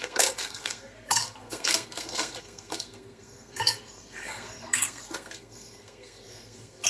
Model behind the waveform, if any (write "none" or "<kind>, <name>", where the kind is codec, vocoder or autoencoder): codec, SNAC